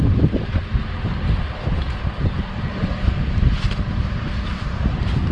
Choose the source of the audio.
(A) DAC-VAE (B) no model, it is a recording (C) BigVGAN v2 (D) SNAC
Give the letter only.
B